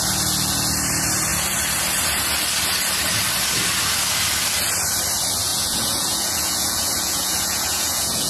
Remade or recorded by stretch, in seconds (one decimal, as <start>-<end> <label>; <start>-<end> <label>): 0.0-5.5 recorded; 5.5-8.3 remade